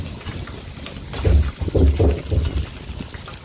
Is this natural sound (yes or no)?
yes